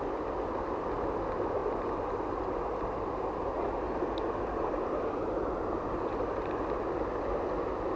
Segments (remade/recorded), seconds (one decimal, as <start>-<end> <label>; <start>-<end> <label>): 0.0-8.0 recorded